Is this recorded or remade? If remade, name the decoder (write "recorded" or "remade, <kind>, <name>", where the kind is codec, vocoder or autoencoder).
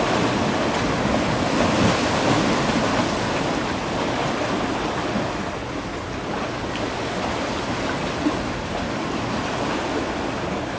recorded